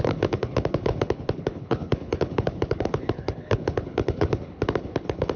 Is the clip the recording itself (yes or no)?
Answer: no